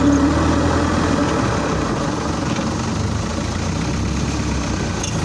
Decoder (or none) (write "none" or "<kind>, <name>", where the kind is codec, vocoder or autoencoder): none